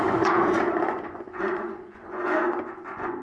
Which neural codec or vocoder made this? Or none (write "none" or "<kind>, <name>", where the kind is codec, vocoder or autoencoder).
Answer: vocoder, Vocos